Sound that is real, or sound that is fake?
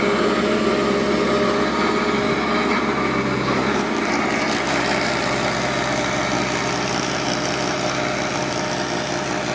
real